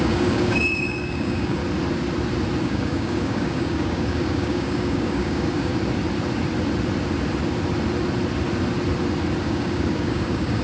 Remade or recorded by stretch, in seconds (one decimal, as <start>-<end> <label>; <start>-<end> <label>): 0.0-1.6 remade; 1.6-2.6 recorded; 2.6-5.7 remade; 5.7-9.4 recorded; 9.4-10.6 remade